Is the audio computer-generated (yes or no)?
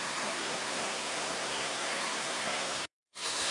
yes